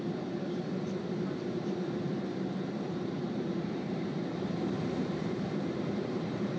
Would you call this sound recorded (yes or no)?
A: no